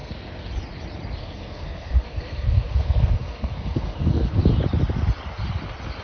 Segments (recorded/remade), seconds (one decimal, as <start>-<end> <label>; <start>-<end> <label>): 0.0-0.5 remade; 0.5-1.2 recorded; 1.2-4.4 remade; 4.4-6.0 recorded